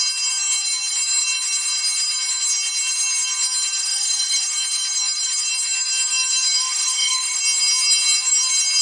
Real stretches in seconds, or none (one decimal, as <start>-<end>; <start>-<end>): 0.0-3.8; 4.4-6.6; 7.4-8.8